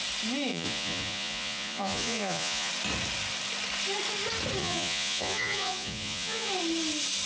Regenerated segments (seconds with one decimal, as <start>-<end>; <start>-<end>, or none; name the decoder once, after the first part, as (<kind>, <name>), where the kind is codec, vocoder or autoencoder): 0.5-2.7 (vocoder, Vocos); 4.6-6.5